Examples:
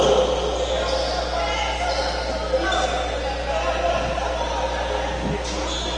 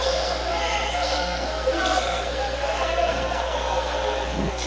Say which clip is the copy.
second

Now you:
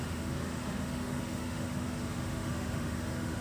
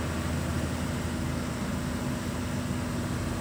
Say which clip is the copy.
first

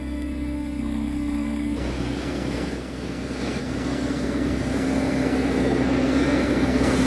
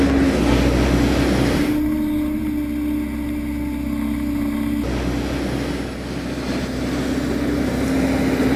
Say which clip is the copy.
first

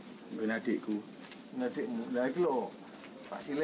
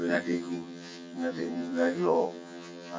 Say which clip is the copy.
second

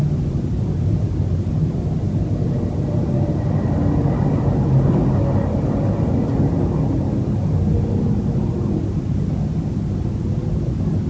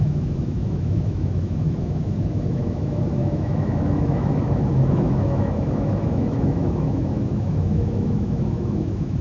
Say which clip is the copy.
second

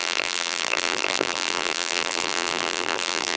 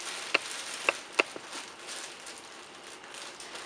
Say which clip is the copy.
first